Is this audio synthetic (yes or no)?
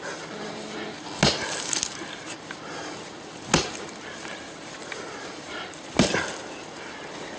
no